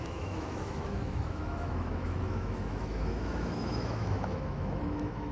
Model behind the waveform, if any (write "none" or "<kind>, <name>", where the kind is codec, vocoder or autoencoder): autoencoder, DAC-VAE